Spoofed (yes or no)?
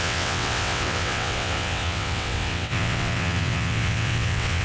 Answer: yes